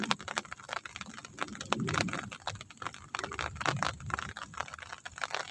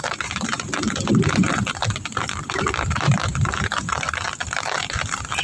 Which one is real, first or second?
first